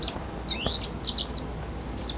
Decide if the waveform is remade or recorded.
recorded